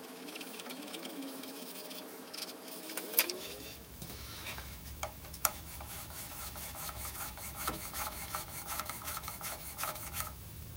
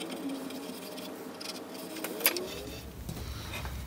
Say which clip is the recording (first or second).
second